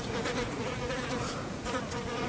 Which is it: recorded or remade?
remade